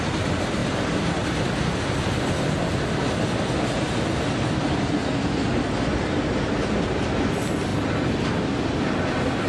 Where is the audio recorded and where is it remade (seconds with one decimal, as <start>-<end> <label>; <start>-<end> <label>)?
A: 0.0-9.5 recorded